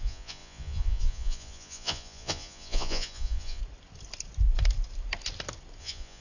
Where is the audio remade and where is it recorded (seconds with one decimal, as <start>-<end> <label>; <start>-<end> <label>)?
0.0-3.6 remade; 3.6-5.8 recorded; 5.8-6.2 remade